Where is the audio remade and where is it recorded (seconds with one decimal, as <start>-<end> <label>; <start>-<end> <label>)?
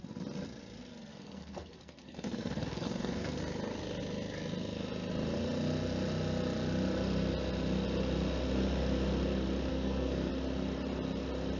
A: 0.0-1.1 recorded; 1.1-3.4 remade; 3.4-9.7 recorded; 9.7-10.3 remade; 10.3-11.6 recorded